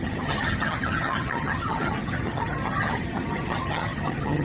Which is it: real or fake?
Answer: fake